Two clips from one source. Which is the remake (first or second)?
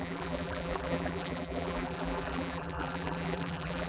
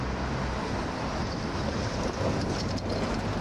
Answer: first